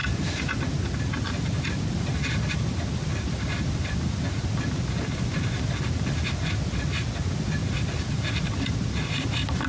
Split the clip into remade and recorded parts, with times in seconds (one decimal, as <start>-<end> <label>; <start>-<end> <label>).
0.0-9.7 recorded